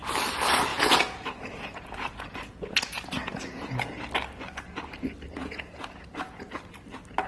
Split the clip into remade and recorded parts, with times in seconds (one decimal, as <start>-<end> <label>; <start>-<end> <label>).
0.0-0.7 recorded; 0.7-4.0 remade; 4.0-5.3 recorded; 5.3-6.5 remade; 6.5-7.3 recorded